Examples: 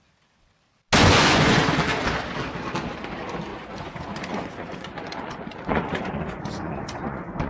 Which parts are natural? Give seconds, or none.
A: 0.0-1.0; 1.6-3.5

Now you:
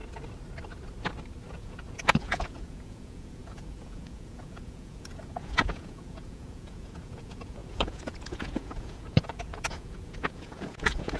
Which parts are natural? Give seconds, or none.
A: 0.0-1.5

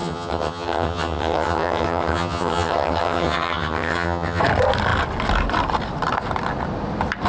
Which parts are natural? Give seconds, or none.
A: 4.4-7.3

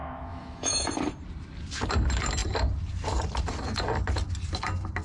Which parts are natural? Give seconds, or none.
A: 0.9-5.0

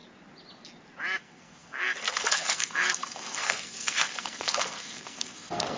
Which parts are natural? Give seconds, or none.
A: 0.0-1.2